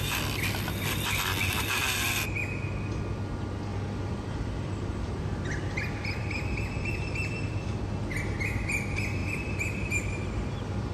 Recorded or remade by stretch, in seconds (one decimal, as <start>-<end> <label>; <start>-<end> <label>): 0.0-3.7 recorded; 3.7-7.8 remade; 7.8-9.2 recorded; 9.2-10.3 remade; 10.3-10.9 recorded